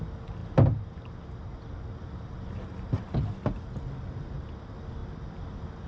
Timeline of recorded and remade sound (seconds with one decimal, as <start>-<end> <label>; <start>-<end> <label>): 0.0-5.9 recorded